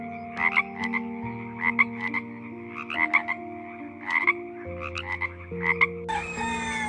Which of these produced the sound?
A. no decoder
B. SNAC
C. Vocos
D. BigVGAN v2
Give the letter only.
A